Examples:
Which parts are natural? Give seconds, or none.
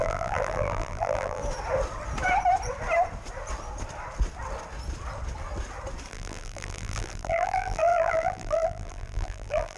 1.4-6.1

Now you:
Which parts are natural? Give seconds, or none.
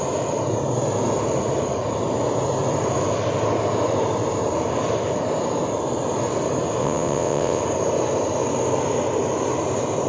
0.0-6.8; 7.6-10.1